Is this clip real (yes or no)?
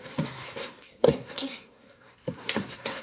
no